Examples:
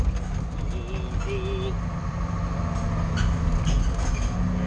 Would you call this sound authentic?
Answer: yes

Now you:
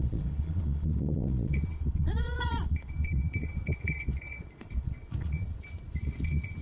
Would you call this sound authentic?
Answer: no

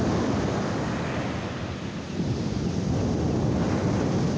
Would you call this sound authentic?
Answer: yes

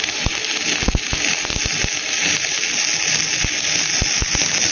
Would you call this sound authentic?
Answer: yes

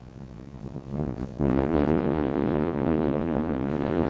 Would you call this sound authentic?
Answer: no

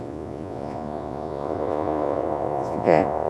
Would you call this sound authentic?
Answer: no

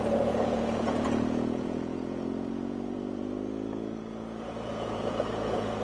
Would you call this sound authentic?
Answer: no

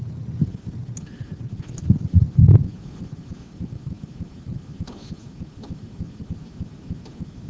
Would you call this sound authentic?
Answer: yes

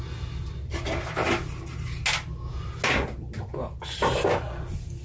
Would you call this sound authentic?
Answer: yes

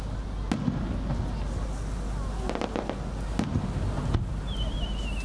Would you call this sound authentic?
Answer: yes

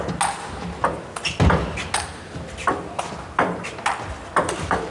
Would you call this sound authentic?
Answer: yes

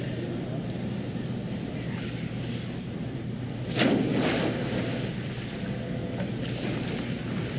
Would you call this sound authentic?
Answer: yes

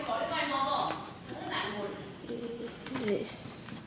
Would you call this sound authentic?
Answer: yes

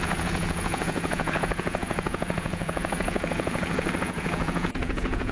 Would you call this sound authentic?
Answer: no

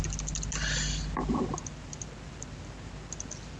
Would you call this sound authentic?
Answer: yes